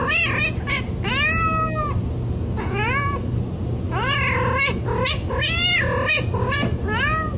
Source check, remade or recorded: recorded